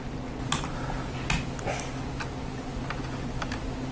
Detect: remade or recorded recorded